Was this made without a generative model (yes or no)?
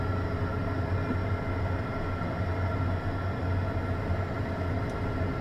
yes